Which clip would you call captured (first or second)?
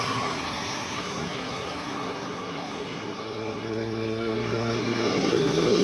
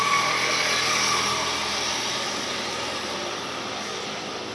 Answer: second